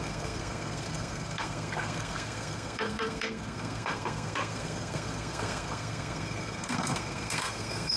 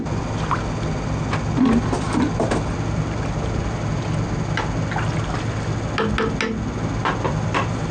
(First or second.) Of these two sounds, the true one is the second